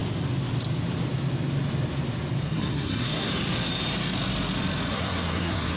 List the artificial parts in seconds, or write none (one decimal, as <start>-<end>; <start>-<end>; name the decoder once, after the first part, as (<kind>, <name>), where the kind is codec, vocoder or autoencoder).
2.4-3.3 (codec, SNAC); 4.9-5.8